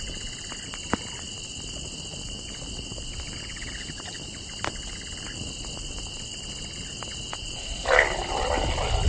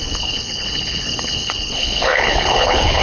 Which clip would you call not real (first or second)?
second